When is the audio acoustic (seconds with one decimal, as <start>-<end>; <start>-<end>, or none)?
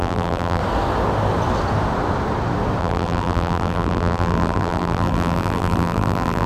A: 0.6-2.8